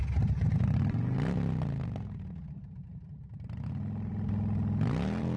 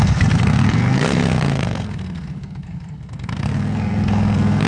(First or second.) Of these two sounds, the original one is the first